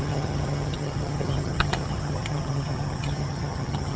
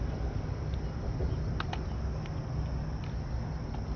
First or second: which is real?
second